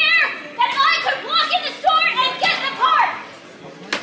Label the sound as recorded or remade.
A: recorded